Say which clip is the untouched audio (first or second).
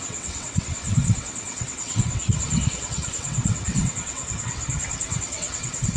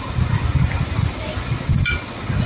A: second